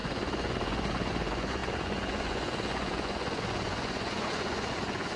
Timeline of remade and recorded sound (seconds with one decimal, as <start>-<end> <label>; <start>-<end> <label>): 0.0-5.2 remade

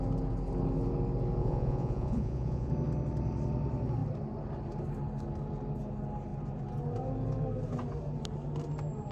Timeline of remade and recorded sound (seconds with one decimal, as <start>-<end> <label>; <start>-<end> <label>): 0.0-1.4 recorded; 1.4-2.7 remade; 2.7-9.1 recorded

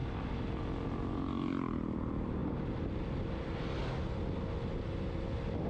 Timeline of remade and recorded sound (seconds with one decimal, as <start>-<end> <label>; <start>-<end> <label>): 0.0-5.7 recorded

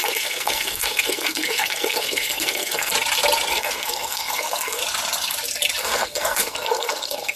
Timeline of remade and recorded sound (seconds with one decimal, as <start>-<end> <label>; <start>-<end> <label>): 0.0-2.9 remade; 2.9-3.5 recorded; 3.5-4.8 remade; 4.8-5.8 recorded; 5.8-7.4 remade

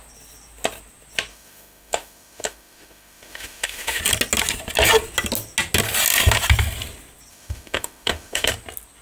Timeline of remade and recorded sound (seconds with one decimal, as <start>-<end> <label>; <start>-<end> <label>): 0.0-1.3 recorded; 1.3-4.0 remade; 4.0-7.3 recorded; 7.3-8.5 remade; 8.5-9.0 recorded

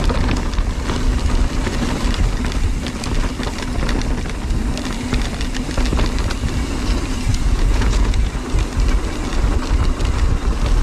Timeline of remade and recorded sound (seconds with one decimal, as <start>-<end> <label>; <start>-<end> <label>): 0.0-7.3 recorded; 7.3-8.3 remade; 8.3-10.8 recorded

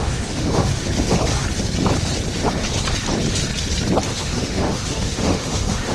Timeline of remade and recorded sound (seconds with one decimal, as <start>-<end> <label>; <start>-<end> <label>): 0.0-0.7 remade; 0.7-4.1 recorded; 4.1-5.9 remade

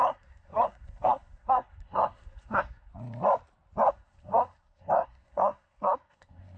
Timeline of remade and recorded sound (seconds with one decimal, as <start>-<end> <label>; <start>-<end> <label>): 0.0-2.9 remade; 2.9-3.9 recorded; 3.9-6.6 remade